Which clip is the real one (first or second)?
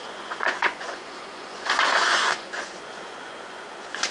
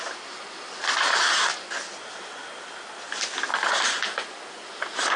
second